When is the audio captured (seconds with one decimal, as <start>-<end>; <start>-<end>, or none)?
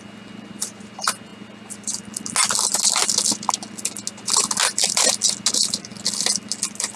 0.0-7.0